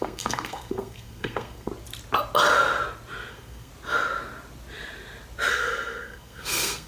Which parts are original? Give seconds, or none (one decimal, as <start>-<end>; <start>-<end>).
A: 1.7-3.3; 3.7-5.5